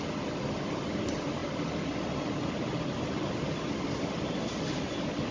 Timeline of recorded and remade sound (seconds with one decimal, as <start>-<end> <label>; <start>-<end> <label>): 0.0-5.3 recorded